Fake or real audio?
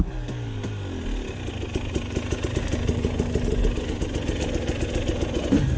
real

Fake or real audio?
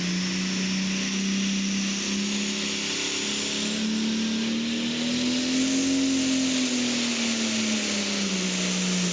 real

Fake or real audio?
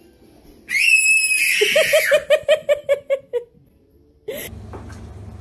real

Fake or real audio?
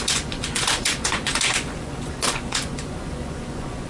fake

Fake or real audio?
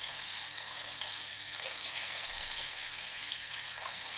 fake